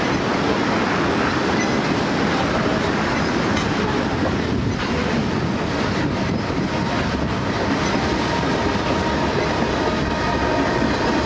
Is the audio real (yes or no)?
yes